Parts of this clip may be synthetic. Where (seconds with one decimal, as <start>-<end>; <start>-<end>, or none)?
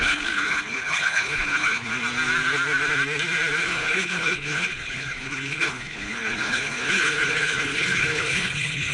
0.0-1.9; 3.6-8.9